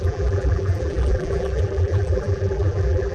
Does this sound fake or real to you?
fake